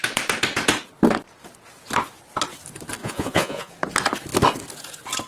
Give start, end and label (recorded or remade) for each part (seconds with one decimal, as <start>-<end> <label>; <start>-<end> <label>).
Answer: 0.0-3.0 recorded; 3.0-3.7 remade; 3.7-5.3 recorded